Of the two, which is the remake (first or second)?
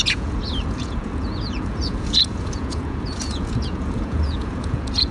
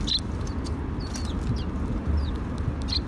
first